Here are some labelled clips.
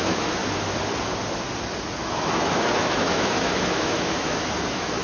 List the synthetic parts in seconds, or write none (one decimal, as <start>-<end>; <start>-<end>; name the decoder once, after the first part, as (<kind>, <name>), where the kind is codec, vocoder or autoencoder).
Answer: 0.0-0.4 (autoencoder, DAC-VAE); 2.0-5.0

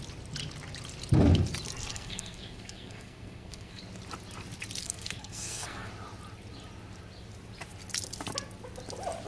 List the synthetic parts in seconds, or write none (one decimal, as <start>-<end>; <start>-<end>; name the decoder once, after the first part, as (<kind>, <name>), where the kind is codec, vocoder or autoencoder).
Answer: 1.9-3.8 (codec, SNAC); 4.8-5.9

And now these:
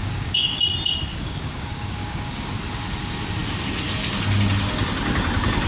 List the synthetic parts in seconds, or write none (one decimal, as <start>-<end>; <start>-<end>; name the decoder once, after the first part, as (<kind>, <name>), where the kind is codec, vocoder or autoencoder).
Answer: 0.0-0.6 (codec, DAC); 1.1-2.6

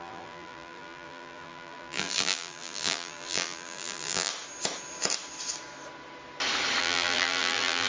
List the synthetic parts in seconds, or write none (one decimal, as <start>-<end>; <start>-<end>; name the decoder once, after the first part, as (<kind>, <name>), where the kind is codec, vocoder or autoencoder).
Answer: 0.0-4.3 (vocoder, BigVGAN v2); 6.8-7.9